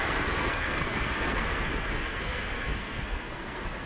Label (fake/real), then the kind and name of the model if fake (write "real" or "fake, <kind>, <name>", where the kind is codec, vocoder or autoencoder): fake, codec, SNAC